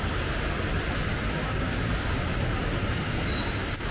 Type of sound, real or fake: real